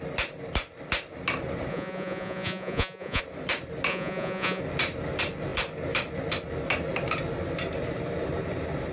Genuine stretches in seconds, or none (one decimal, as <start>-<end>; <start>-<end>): 0.0-1.7; 3.2-3.9; 4.6-8.9